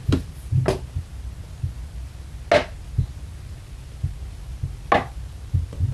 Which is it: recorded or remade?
recorded